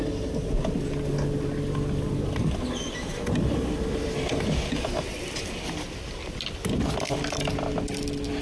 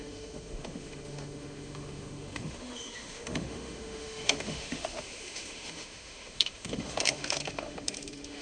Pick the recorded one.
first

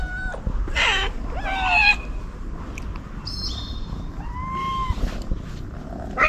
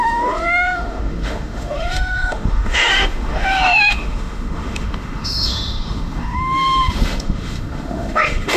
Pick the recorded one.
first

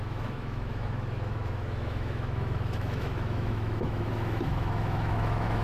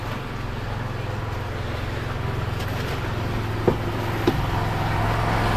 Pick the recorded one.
second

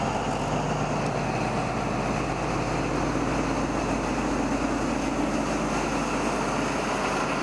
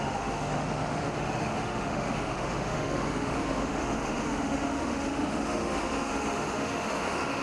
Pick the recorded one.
first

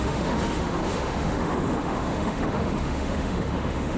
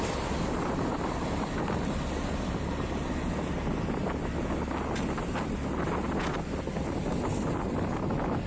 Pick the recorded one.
second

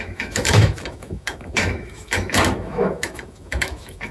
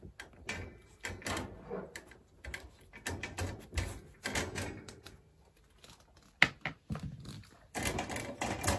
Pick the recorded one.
second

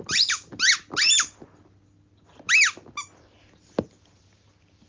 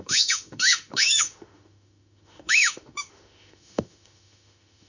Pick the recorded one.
first